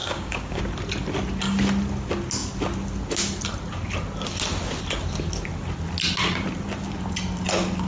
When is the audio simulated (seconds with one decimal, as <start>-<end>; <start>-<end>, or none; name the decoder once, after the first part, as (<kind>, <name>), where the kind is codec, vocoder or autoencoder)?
0.0-0.6 (codec, DAC)